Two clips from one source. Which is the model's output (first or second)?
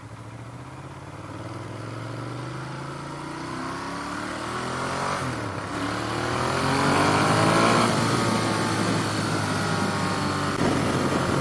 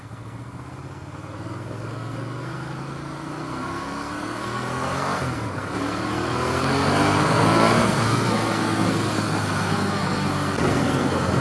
second